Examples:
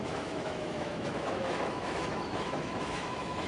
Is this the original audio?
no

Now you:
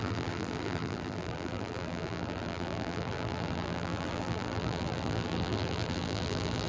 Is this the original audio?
no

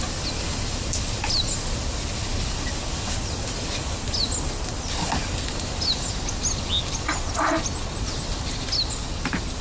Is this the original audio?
yes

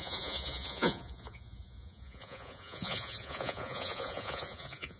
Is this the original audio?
no